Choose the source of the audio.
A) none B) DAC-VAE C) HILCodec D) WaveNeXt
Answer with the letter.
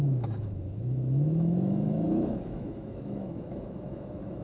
B